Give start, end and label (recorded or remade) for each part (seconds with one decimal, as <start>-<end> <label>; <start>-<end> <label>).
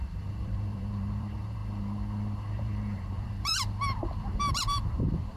0.0-5.4 remade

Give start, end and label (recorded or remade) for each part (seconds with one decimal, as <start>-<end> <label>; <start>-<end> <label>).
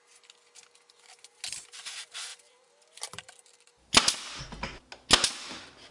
0.0-2.3 recorded; 2.3-4.4 remade; 4.4-5.9 recorded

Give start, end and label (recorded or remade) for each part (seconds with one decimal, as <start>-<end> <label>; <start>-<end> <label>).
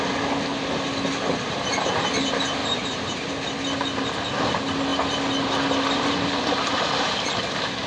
0.0-2.6 recorded; 2.6-3.3 remade; 3.3-7.9 recorded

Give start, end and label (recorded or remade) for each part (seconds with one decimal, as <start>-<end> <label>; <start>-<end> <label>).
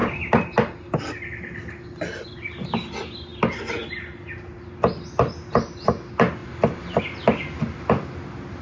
0.0-6.4 recorded; 6.4-7.0 remade; 7.0-8.6 recorded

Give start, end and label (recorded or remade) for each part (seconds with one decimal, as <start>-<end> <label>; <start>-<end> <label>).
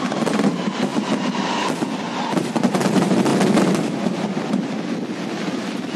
0.0-6.0 recorded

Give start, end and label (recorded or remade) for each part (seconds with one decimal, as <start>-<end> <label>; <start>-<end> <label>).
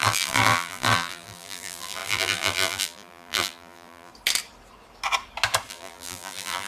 0.0-4.1 remade; 4.1-5.7 recorded; 5.7-6.7 remade